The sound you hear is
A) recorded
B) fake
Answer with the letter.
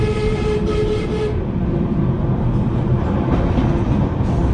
A